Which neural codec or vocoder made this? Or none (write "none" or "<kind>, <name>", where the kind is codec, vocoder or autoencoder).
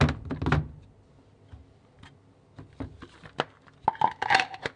none